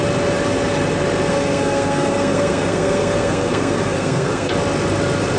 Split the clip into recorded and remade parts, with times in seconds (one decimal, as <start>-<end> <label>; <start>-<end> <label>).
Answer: 0.0-1.3 recorded; 1.3-4.5 remade; 4.5-5.4 recorded